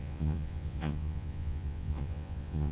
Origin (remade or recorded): remade